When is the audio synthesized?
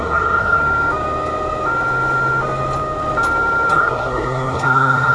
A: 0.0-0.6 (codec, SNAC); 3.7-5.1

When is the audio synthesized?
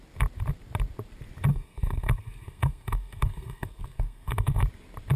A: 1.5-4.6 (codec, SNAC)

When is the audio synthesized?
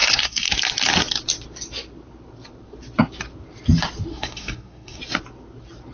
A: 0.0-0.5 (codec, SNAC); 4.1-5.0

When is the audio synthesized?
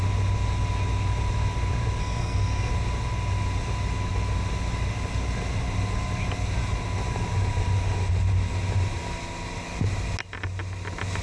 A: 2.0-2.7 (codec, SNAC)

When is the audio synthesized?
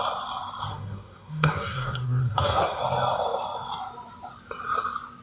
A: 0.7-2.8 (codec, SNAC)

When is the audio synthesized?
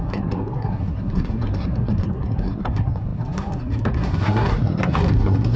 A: 0.0-5.6 (codec, SNAC)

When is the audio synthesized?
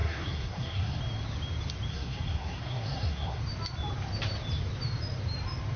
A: 0.0-1.0 (codec, SNAC); 1.9-3.4